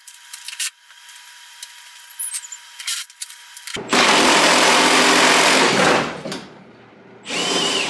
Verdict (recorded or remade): remade